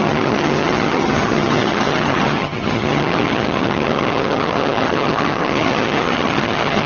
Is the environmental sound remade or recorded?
remade